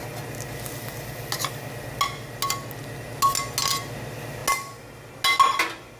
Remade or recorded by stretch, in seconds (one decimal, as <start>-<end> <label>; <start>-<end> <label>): 0.0-6.0 recorded